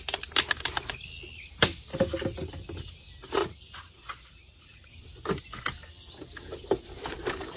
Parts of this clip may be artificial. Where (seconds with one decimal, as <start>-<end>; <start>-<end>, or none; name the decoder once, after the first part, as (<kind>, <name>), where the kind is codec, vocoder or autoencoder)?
3.4-4.9 (vocoder, Vocos)